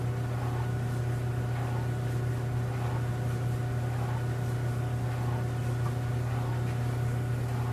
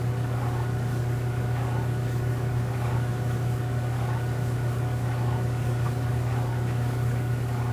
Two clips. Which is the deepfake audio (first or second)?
second